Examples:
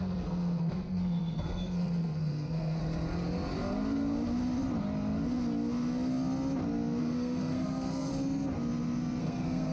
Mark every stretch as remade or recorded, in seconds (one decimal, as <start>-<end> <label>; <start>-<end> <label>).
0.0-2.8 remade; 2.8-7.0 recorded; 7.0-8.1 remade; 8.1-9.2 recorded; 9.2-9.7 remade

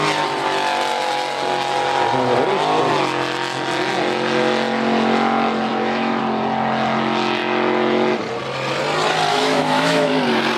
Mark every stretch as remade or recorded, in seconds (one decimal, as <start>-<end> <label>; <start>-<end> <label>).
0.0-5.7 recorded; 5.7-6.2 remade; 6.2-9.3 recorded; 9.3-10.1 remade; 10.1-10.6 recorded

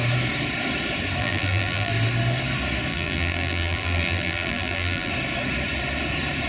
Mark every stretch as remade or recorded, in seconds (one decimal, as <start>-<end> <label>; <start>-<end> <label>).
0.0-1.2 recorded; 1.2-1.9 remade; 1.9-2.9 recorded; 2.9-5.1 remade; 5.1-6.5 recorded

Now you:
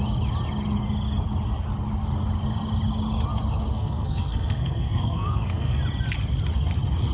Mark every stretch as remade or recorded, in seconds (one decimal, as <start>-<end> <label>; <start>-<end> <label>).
0.0-3.7 recorded; 3.7-5.8 remade; 5.8-7.1 recorded